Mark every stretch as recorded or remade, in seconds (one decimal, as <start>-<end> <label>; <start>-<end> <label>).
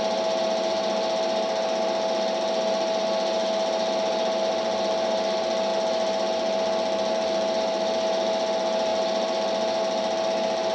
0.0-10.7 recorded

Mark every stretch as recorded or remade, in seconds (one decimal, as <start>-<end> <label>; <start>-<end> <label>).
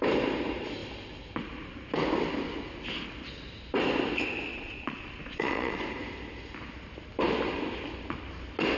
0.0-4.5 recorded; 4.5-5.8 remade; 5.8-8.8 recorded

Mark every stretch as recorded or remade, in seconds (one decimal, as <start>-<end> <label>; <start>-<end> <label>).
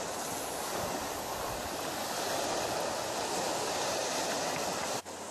0.0-5.3 recorded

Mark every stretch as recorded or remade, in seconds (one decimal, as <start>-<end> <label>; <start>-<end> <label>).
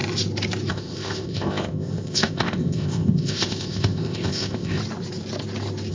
0.0-0.7 recorded; 0.7-4.8 remade; 4.8-5.9 recorded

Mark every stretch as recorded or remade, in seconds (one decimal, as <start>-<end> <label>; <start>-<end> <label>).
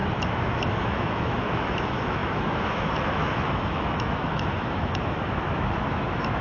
0.0-6.4 remade